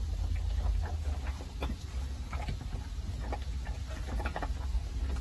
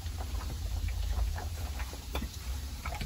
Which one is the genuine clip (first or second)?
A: first